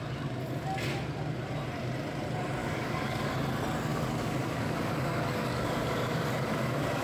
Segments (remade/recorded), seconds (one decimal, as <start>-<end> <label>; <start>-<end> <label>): 0.0-2.6 recorded; 2.6-3.3 remade; 3.3-3.9 recorded; 3.9-7.0 remade